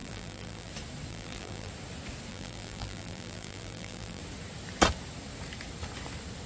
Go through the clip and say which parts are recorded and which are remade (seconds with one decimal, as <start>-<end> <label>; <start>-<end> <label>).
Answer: 0.0-0.7 remade; 0.7-1.1 recorded; 1.1-1.7 remade; 1.7-2.3 recorded; 2.3-4.2 remade; 4.2-6.5 recorded